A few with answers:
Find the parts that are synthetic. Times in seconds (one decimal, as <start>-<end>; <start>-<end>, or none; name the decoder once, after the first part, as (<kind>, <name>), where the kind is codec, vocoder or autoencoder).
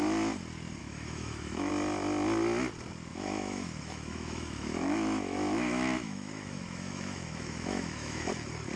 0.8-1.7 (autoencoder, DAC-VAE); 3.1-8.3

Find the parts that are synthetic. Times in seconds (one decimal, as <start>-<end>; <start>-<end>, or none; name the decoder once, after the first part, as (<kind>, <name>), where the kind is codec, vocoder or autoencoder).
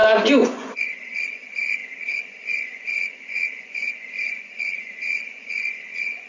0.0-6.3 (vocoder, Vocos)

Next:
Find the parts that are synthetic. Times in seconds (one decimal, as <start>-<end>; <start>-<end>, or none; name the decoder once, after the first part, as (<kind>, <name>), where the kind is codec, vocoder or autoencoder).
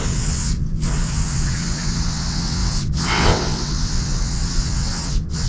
0.0-5.5 (vocoder, WaveNeXt)